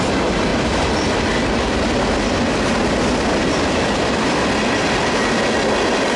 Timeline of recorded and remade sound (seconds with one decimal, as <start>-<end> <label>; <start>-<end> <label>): 0.0-6.2 recorded